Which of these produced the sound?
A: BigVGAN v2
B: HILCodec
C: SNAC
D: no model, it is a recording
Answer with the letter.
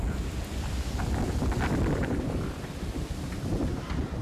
D